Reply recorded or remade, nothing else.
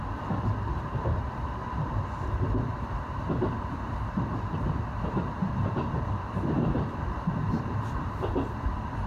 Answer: remade